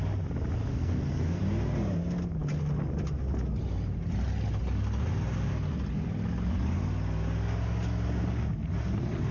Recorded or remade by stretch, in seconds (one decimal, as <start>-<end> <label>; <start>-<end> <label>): 0.0-0.7 recorded; 0.7-1.4 remade; 1.4-9.3 recorded